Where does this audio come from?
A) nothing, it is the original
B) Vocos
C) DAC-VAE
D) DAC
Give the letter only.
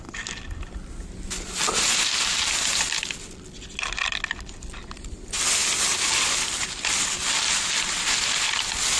A